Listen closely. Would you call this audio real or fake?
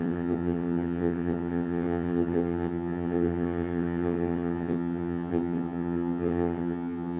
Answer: fake